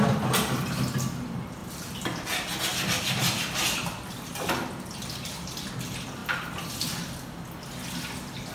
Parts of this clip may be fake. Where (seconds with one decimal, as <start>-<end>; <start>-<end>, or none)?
none